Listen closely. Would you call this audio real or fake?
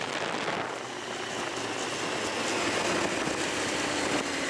real